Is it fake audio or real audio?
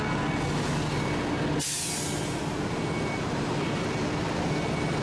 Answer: real